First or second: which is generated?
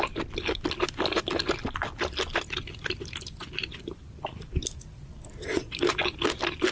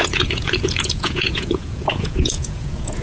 second